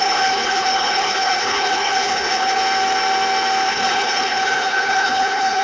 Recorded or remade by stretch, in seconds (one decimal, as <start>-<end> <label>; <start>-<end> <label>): 0.0-2.6 remade; 2.6-3.7 recorded; 3.7-5.6 remade